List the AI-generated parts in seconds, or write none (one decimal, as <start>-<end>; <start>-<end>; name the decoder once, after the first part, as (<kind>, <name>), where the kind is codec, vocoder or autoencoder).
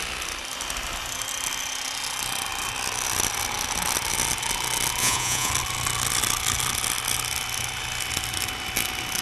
5.0-5.5 (vocoder, Vocos)